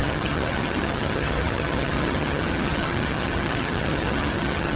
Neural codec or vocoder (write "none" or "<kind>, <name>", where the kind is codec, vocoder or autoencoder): vocoder, HiFi-GAN